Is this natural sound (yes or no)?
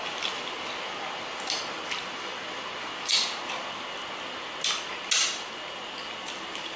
yes